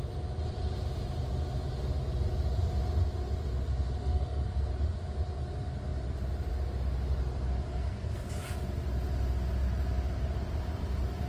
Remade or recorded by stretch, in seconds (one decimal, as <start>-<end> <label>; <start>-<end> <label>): 0.0-4.0 recorded; 4.0-4.7 remade; 4.7-7.7 recorded; 7.7-8.3 remade; 8.3-11.3 recorded